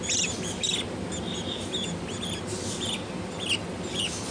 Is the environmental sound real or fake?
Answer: real